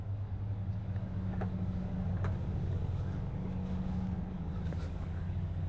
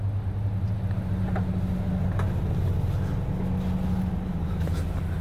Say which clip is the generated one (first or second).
first